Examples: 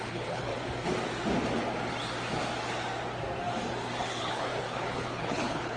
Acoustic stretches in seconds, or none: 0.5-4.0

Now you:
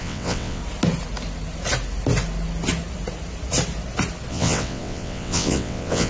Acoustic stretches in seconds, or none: 0.6-4.3

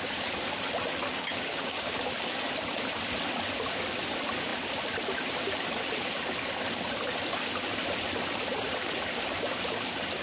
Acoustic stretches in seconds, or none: 0.0-1.1; 2.0-10.2

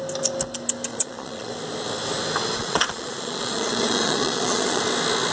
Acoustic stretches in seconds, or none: 0.0-0.9; 1.5-2.6; 4.8-5.3

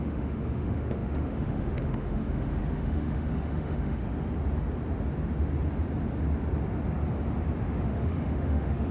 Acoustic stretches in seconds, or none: 4.0-7.6

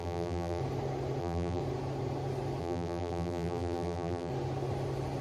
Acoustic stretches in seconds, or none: 0.6-1.2; 1.6-2.6; 4.3-5.2

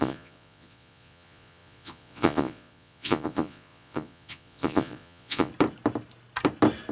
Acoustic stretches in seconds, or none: 5.5-6.9

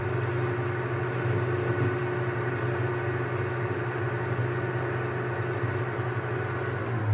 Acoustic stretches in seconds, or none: 0.0-7.1